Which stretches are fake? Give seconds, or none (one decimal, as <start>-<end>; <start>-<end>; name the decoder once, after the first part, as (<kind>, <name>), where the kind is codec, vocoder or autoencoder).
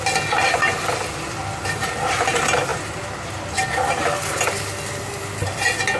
none